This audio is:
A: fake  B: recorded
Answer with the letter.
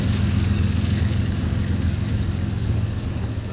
A